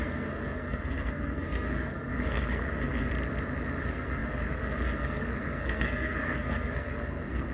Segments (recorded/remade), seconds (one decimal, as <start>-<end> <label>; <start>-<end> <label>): 0.0-3.1 remade; 3.1-3.8 recorded; 3.8-7.5 remade